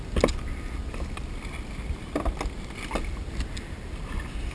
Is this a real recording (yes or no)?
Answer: yes